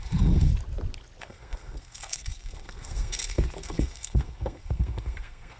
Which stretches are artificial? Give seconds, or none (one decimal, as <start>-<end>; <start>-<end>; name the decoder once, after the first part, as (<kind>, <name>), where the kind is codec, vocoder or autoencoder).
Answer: 0.0-0.5 (codec, SNAC); 1.2-5.6